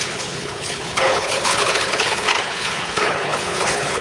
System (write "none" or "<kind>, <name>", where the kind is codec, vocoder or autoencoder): codec, HILCodec